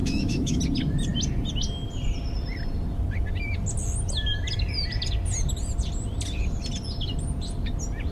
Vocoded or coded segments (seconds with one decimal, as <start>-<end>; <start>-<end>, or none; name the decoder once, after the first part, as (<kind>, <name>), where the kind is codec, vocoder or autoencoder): 0.0-0.6 (autoencoder, DAC-VAE)